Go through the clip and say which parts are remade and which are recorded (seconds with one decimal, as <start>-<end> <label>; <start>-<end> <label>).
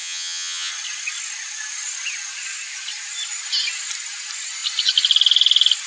0.0-0.7 remade; 0.7-5.9 recorded